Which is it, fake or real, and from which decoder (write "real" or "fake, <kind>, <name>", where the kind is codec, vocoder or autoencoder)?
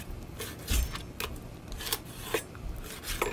real